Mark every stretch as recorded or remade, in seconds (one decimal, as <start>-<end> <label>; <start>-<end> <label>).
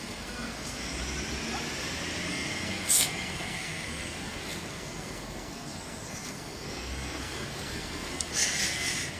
0.0-0.9 remade; 0.9-2.3 recorded; 2.3-9.2 remade